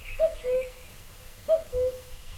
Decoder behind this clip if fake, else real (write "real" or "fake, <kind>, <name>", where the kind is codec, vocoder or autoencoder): fake, codec, SNAC